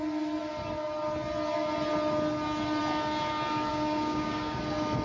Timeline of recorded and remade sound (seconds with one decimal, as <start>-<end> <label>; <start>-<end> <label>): 0.0-3.7 recorded; 3.7-4.6 remade; 4.6-5.0 recorded